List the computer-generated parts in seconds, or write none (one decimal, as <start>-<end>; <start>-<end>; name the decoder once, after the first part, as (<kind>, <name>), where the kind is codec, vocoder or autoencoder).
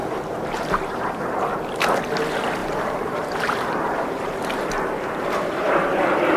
0.0-1.6 (vocoder, BigVGAN v2); 2.6-6.0